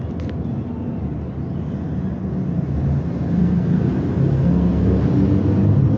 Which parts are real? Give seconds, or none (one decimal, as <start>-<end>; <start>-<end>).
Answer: 0.0-3.4; 3.9-4.3; 5.0-6.0